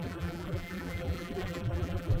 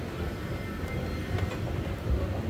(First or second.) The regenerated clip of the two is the first